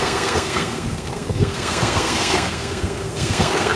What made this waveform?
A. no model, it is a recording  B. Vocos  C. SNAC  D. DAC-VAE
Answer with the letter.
C